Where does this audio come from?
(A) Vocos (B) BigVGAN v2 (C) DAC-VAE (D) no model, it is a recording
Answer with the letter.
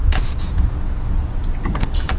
A